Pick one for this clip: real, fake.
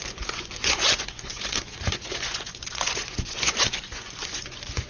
fake